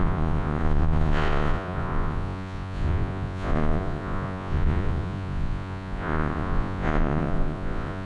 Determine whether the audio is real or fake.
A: fake